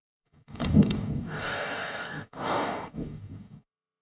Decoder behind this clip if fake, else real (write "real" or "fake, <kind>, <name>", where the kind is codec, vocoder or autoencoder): fake, codec, DAC